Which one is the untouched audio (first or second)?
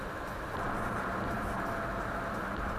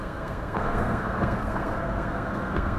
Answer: first